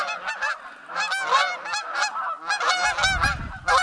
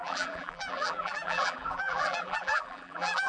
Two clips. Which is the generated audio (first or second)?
second